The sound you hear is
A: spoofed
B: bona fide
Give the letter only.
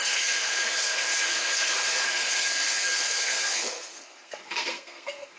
A